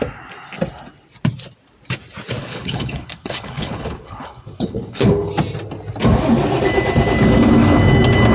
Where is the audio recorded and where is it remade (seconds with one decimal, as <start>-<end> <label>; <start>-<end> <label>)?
0.0-2.4 recorded; 2.4-5.3 remade; 5.3-8.3 recorded